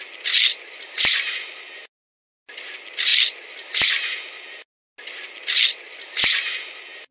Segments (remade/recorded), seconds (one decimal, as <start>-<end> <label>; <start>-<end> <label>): 0.0-7.1 recorded